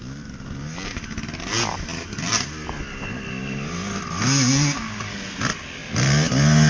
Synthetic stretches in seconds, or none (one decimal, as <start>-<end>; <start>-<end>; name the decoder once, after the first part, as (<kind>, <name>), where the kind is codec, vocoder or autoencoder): none

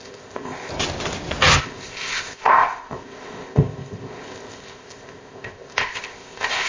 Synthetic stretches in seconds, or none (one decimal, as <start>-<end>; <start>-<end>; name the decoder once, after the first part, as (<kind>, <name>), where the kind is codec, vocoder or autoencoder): 0.0-0.7 (codec, ZipCodec); 1.6-6.7

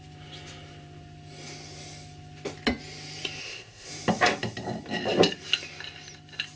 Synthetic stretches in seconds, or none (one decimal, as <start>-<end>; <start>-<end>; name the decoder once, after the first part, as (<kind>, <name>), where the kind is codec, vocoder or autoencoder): 3.4-3.9 (codec, ZipCodec)

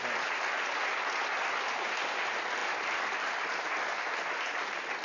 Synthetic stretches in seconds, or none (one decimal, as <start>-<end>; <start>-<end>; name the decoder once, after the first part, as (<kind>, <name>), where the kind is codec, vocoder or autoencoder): none

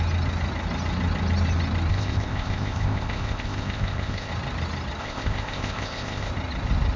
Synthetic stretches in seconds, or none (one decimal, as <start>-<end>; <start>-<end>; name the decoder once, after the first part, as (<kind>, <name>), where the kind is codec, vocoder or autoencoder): 1.9-4.3 (codec, ZipCodec); 5.0-6.3

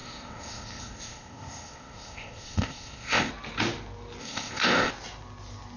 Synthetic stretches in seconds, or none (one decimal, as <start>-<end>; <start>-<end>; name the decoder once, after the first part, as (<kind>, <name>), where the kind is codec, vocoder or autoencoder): 0.0-3.3 (codec, ZipCodec); 4.2-4.9